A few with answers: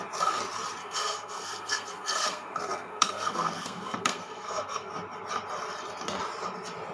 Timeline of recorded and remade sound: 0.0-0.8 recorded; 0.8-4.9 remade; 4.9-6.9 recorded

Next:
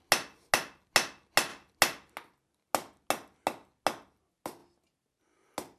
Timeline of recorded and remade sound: 0.0-5.8 recorded

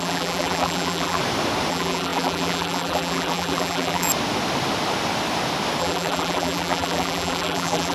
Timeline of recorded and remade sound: 0.0-1.2 remade; 1.2-1.7 recorded; 1.7-4.1 remade; 4.1-5.8 recorded; 5.8-7.9 remade